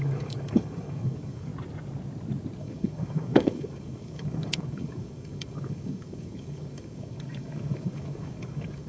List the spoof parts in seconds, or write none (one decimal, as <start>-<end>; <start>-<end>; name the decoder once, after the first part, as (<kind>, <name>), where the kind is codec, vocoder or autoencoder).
0.0-1.5 (codec, DAC); 2.6-8.9